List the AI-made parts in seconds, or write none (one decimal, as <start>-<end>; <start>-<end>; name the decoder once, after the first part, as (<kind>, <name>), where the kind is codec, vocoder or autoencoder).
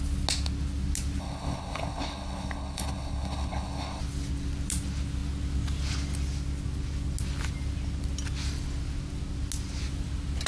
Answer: 1.2-4.0 (codec, HILCodec)